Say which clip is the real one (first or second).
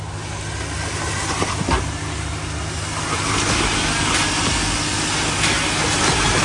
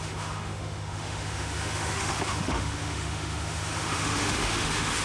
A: first